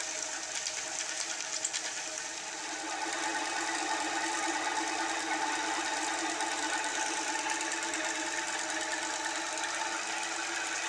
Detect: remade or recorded recorded